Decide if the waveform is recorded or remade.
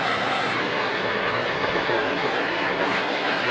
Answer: remade